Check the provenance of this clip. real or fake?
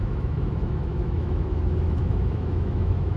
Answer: fake